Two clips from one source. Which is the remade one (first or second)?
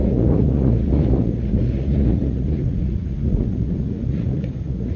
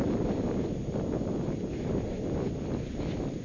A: first